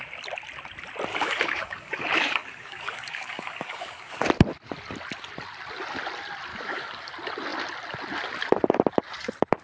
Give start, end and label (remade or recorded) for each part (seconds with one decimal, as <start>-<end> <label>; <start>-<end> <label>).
0.0-1.1 recorded; 1.1-4.1 remade; 4.1-6.5 recorded; 6.5-7.1 remade; 7.1-9.6 recorded